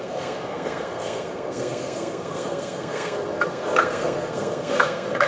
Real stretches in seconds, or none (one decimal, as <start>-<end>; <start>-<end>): none